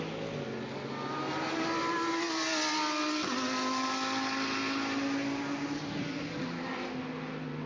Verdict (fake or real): real